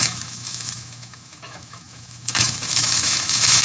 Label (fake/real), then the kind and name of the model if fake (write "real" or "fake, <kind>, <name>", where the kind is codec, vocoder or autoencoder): fake, autoencoder, DAC-VAE